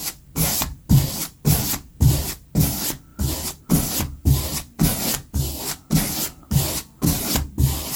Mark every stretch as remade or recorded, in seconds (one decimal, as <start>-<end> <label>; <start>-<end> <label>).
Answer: 0.0-3.1 remade; 3.1-3.6 recorded; 3.6-4.9 remade; 4.9-6.0 recorded; 6.0-8.0 remade